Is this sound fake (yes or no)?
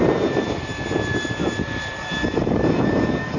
no